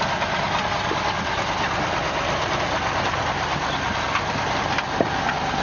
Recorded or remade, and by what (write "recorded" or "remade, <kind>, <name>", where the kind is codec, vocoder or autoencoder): recorded